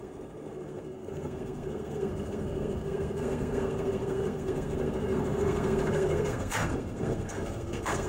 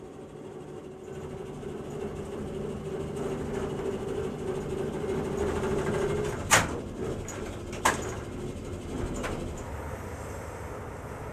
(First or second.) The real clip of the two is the second